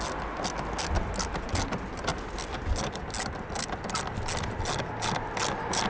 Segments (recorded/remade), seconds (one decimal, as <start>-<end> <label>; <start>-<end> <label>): 0.0-5.9 recorded